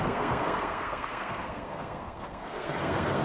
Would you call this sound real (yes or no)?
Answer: no